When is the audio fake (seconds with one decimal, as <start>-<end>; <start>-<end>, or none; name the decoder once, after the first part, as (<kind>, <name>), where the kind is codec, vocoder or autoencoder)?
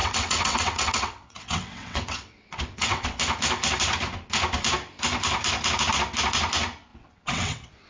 0.0-3.2 (vocoder, WaveNeXt); 6.9-7.9